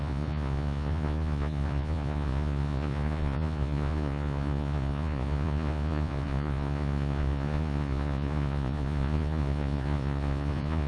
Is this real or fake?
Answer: fake